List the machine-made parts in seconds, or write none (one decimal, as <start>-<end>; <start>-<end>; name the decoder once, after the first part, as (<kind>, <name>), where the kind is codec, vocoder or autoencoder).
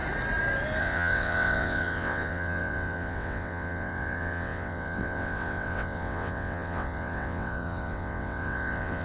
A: 0.8-9.0 (vocoder, WaveNeXt)